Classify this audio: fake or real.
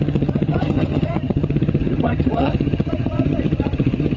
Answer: fake